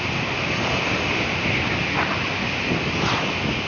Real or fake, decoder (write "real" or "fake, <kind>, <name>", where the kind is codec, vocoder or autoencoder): real